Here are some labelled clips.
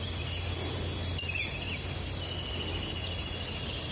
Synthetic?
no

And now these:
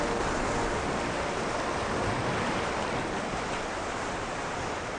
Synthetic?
no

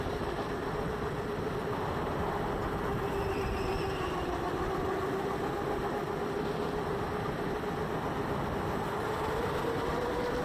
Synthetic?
no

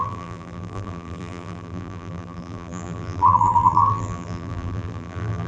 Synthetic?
yes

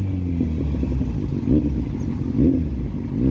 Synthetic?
no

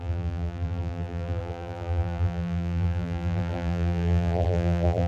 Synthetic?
yes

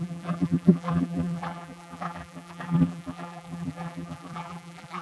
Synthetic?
yes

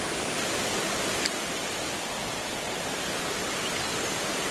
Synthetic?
no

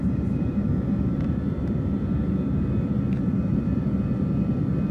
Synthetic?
yes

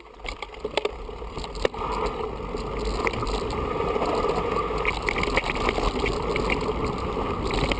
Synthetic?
no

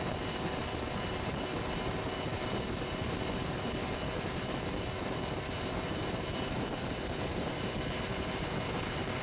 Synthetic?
yes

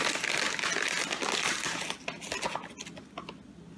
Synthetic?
no